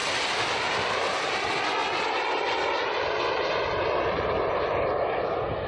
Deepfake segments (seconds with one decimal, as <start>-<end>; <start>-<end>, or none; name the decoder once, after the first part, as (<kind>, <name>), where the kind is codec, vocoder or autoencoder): none